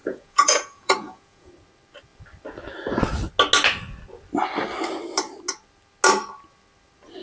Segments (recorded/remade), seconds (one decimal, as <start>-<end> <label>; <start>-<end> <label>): 0.0-1.5 remade; 1.5-7.2 recorded